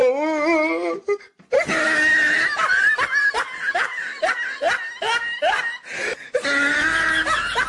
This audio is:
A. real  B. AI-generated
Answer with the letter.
A